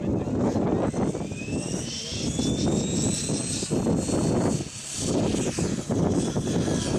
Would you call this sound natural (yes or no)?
yes